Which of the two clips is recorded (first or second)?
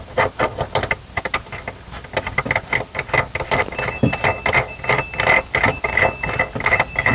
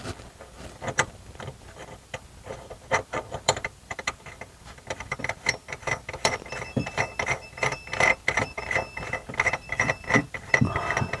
first